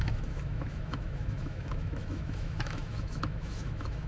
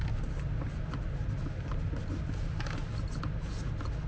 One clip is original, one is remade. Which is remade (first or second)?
first